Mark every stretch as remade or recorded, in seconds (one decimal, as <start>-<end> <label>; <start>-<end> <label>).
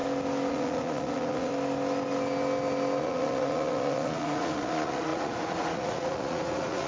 0.0-0.5 recorded; 0.5-1.5 remade; 1.5-3.0 recorded; 3.0-6.9 remade